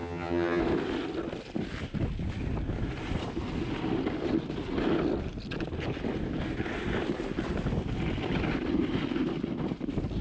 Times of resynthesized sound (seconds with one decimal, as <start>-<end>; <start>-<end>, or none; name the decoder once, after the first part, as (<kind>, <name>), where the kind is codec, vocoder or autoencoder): 0.0-0.6 (vocoder, HiFi-GAN)